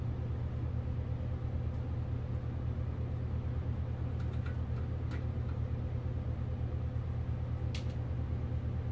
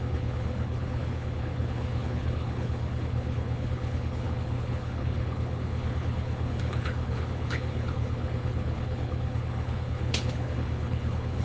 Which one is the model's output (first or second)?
second